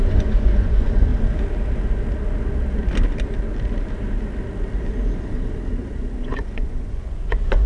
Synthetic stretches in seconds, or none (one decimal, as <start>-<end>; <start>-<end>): 0.0-1.1; 5.7-7.7